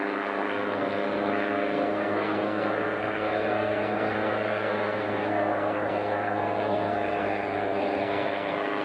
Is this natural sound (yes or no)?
no